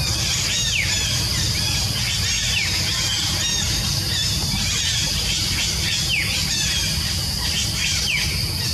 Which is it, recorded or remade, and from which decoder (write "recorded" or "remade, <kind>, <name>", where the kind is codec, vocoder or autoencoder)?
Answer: recorded